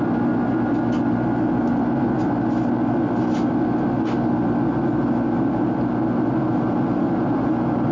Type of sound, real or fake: real